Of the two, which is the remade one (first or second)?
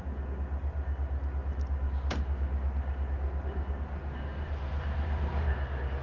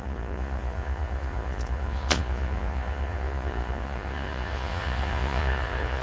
second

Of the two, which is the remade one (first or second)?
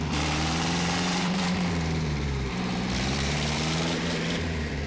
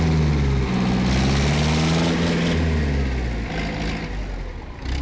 first